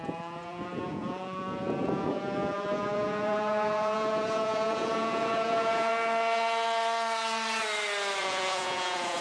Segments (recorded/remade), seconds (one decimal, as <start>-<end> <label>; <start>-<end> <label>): 0.0-5.9 remade; 5.9-8.2 recorded; 8.2-9.2 remade